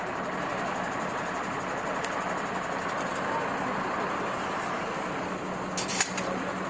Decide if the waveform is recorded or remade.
recorded